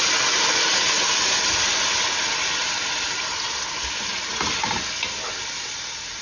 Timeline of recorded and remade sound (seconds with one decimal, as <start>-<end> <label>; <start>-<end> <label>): 0.0-6.2 recorded